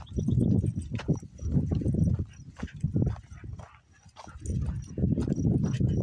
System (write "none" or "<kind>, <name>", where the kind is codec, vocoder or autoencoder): none